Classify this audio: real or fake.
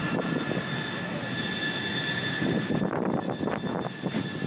real